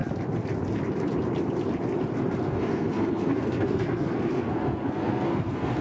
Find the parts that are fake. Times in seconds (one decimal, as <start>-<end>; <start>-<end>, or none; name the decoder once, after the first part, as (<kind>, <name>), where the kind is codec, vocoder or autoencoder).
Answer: 2.5-5.8 (codec, SNAC)